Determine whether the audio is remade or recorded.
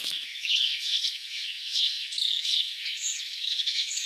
remade